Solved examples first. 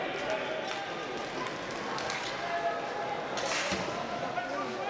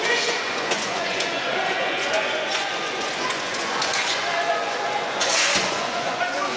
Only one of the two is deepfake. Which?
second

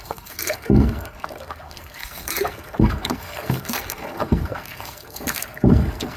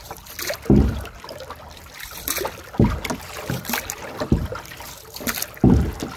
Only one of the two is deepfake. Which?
first